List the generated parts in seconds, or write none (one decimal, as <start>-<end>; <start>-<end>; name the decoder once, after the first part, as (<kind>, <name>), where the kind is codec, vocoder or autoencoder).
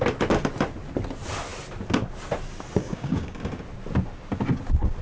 2.8-3.4 (codec, DAC)